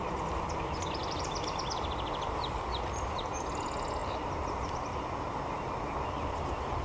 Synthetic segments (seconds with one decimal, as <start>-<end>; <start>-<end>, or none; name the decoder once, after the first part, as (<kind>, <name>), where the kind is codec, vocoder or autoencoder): 1.0-1.6 (vocoder, BigVGAN v2); 4.0-5.8